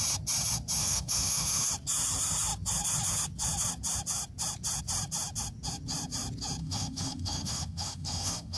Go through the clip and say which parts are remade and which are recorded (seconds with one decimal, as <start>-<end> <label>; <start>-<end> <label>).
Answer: 0.0-0.8 recorded; 0.8-1.7 remade; 1.7-6.6 recorded; 6.6-8.6 remade